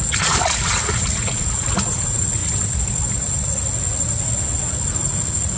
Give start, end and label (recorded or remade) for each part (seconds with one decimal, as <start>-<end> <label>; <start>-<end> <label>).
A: 0.0-2.4 remade; 2.4-4.7 recorded; 4.7-5.6 remade